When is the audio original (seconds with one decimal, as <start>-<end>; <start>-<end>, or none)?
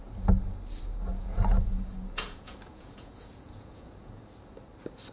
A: 0.0-1.1; 4.2-5.1